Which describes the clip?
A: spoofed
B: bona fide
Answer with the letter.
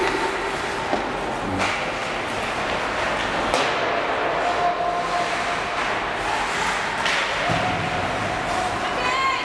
B